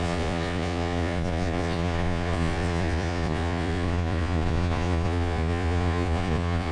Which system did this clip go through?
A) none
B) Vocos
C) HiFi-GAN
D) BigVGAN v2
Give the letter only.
B